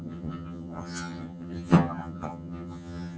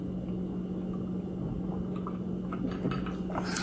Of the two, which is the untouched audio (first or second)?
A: second